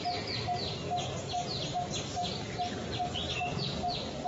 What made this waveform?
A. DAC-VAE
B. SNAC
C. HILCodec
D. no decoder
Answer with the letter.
D